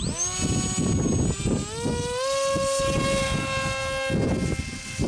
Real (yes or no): yes